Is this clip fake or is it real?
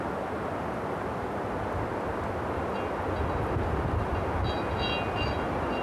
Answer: real